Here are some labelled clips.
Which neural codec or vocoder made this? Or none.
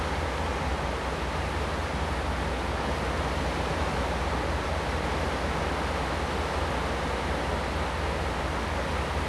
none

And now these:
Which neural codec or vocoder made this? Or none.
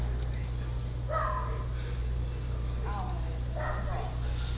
none